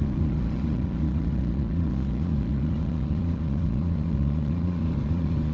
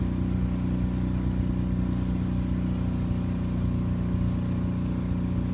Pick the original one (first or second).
second